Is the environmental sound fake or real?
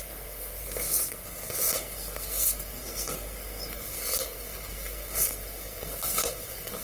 fake